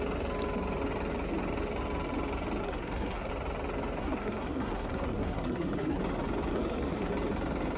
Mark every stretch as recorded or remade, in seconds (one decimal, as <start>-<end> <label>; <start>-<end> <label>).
0.0-2.6 recorded; 2.6-3.3 remade; 3.3-4.0 recorded; 4.0-6.0 remade; 6.0-6.5 recorded; 6.5-7.1 remade; 7.1-7.8 recorded